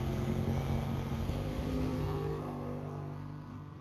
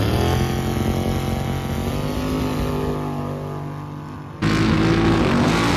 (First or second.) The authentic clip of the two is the second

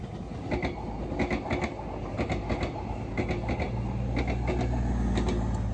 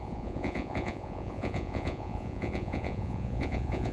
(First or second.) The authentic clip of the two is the first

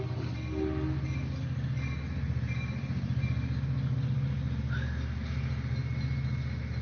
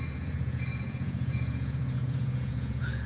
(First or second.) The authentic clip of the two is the first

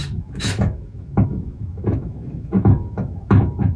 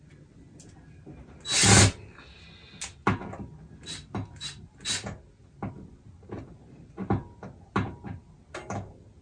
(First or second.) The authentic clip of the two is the second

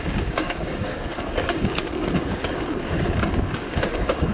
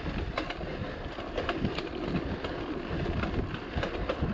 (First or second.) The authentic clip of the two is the second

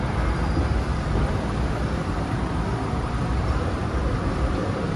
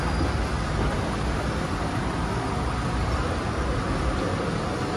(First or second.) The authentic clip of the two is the second